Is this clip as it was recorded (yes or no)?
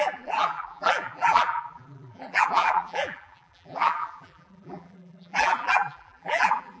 no